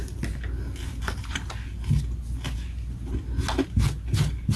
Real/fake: real